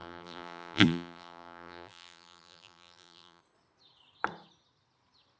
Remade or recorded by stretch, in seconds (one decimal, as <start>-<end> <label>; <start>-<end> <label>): 0.0-3.4 remade; 3.4-5.4 recorded